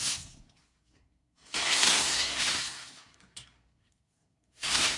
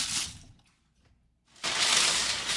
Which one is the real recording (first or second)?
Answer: second